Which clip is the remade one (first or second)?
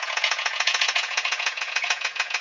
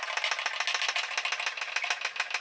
first